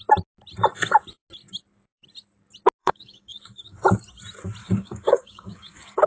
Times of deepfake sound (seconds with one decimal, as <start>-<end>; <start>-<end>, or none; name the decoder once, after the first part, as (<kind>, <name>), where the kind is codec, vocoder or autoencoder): 2.8-3.8 (codec, DAC); 4.6-6.1